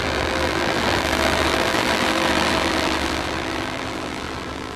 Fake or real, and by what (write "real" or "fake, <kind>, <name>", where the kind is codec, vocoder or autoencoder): fake, vocoder, BigVGAN v2